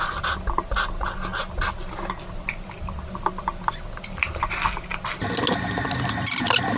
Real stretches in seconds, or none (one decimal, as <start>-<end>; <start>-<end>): 0.0-6.8